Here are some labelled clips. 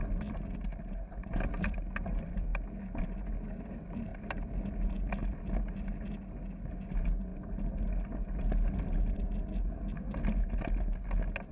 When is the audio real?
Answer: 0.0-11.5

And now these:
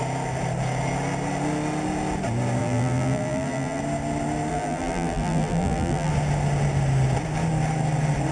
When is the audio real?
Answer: 0.0-2.6; 3.8-4.5; 6.1-8.3

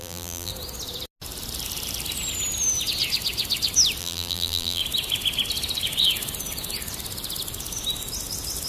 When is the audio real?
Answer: 0.5-4.0; 4.8-8.7

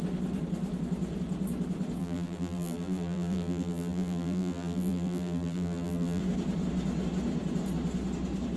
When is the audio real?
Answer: 0.0-2.0; 6.2-8.6

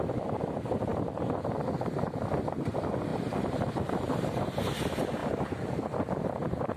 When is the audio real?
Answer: 0.0-3.1; 4.6-6.8

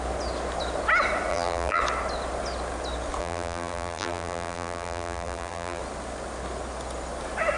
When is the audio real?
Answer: 0.0-1.3; 1.8-3.2; 5.8-7.6

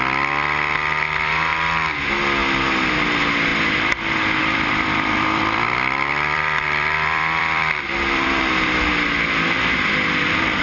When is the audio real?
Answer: 0.0-4.4; 8.9-10.6